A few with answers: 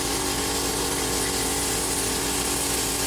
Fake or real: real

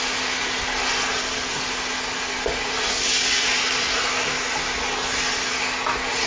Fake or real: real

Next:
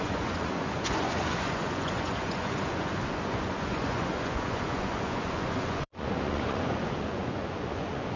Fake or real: fake